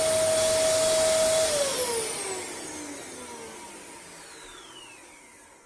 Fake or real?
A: real